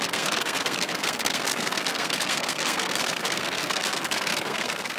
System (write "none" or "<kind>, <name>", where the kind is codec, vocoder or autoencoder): codec, SNAC